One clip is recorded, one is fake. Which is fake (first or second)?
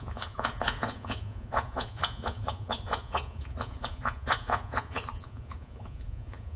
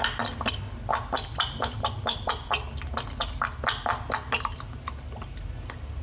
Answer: first